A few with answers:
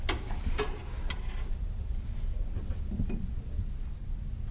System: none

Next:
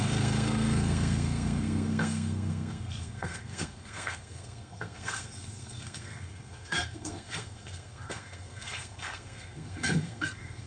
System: codec, SNAC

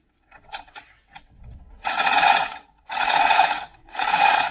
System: vocoder, WaveNeXt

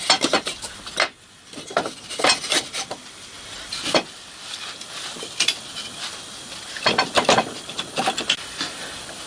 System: none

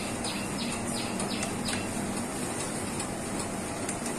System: none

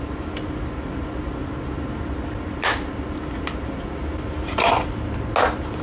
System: none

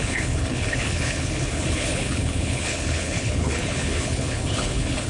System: codec, HILCodec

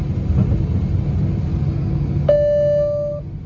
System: none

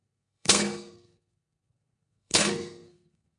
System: codec, SNAC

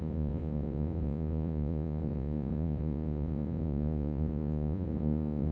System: vocoder, Vocos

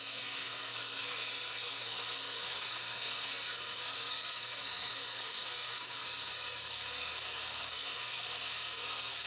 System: codec, SNAC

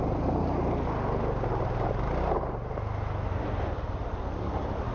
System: none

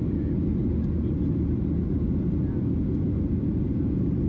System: none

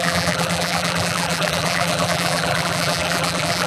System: vocoder, BigVGAN v2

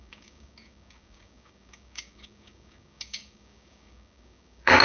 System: codec, DAC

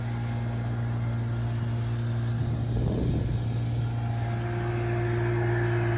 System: none